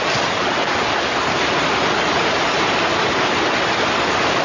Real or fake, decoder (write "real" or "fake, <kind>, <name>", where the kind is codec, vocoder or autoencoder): real